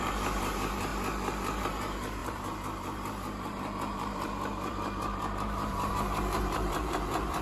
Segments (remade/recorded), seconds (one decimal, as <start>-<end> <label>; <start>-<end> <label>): 0.0-0.9 remade; 0.9-1.6 recorded; 1.6-7.4 remade